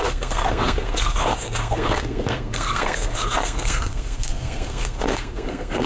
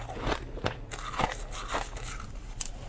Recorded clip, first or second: second